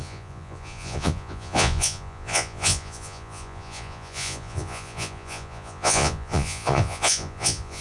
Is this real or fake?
fake